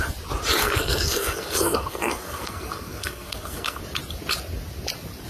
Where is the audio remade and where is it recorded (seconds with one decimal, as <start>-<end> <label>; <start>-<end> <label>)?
0.0-0.6 recorded; 0.6-3.8 remade; 3.8-5.3 recorded